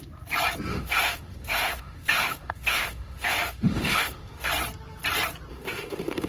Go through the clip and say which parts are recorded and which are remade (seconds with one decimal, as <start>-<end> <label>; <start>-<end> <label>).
0.0-0.7 recorded; 0.7-4.5 remade; 4.5-5.5 recorded; 5.5-6.3 remade